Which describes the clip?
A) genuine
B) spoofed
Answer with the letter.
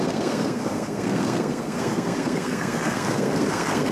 B